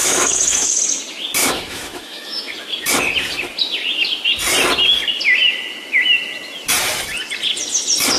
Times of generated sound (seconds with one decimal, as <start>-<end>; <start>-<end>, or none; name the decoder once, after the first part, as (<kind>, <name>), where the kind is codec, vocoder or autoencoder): 0.0-0.8 (autoencoder, DAC-VAE); 1.4-2.5